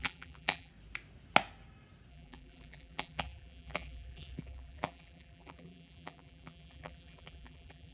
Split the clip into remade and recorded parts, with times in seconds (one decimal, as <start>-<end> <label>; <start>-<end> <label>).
0.0-0.7 remade; 0.7-2.1 recorded; 2.1-7.9 remade

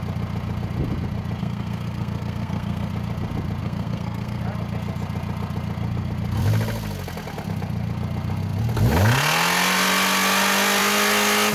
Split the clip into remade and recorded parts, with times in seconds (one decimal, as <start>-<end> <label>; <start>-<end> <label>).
0.0-1.4 recorded; 1.4-2.9 remade; 2.9-3.6 recorded; 3.6-4.4 remade; 4.4-11.5 recorded

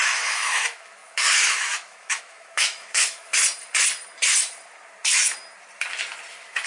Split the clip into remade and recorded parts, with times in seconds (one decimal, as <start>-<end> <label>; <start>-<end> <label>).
0.0-3.4 remade; 3.4-6.3 recorded; 6.3-6.7 remade

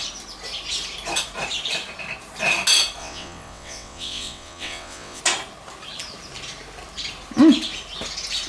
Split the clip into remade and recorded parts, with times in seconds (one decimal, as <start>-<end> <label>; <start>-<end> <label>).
0.0-3.0 recorded; 3.0-5.2 remade; 5.2-8.5 recorded

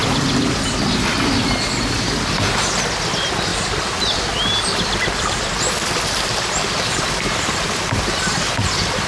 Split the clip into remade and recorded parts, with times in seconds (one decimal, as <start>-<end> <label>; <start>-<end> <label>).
0.0-3.5 recorded; 3.5-8.5 remade; 8.5-9.1 recorded

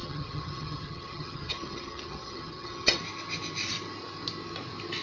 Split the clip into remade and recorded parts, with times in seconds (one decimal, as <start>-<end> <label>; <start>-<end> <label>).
0.0-3.0 remade; 3.0-5.0 recorded

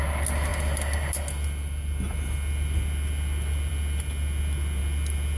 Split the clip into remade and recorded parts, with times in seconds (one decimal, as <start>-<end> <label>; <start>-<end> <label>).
0.0-5.4 recorded